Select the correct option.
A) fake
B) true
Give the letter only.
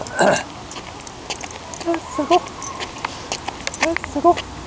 B